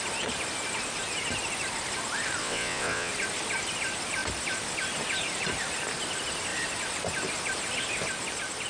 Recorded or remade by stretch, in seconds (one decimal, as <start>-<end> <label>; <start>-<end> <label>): 0.0-2.4 recorded; 2.4-3.1 remade; 3.1-8.7 recorded